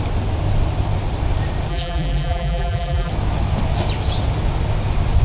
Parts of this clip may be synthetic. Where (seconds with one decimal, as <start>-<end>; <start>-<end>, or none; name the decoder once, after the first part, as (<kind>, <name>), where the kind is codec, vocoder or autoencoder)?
1.7-3.1 (vocoder, BigVGAN v2)